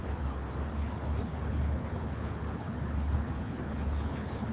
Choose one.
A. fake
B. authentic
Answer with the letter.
A